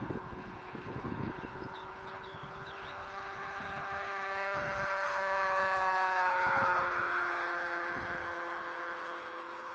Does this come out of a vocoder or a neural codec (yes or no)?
yes